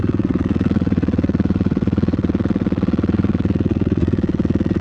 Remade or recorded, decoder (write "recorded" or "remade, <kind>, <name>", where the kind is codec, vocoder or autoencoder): remade, vocoder, WaveNeXt